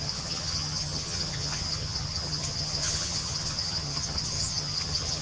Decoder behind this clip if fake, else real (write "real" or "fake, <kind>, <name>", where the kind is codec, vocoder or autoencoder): fake, vocoder, HiFi-GAN